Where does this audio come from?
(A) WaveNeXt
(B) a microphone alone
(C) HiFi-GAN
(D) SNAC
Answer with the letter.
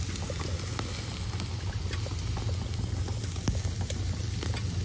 B